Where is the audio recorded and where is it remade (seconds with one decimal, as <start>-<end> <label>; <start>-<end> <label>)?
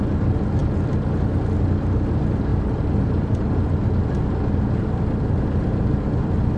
0.0-2.5 recorded; 2.5-6.6 remade